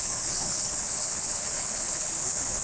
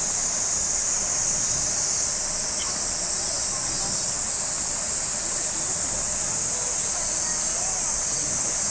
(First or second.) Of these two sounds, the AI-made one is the first